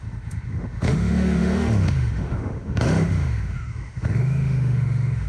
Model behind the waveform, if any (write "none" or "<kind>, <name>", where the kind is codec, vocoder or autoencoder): autoencoder, DAC-VAE